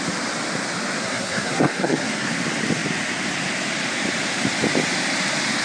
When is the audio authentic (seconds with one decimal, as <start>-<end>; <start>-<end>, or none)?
0.0-1.0; 2.3-5.6